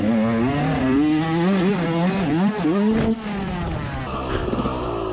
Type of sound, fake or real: real